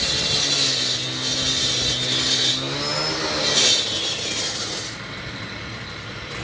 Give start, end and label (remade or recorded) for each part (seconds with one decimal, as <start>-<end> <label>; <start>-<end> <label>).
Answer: 0.0-6.4 recorded